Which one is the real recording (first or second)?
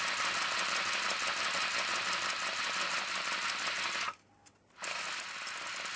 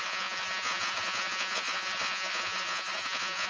first